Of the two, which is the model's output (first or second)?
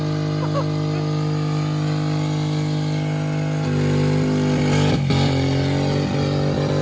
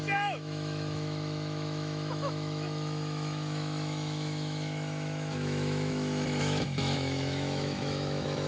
second